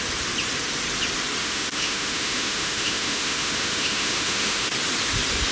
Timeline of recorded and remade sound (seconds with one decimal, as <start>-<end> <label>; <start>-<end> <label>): 0.0-1.4 recorded; 1.4-4.7 remade; 4.7-5.5 recorded